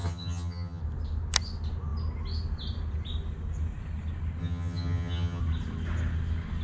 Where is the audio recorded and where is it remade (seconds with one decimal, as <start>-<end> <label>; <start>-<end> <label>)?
0.0-0.8 remade; 0.8-4.4 recorded; 4.4-5.4 remade; 5.4-6.6 recorded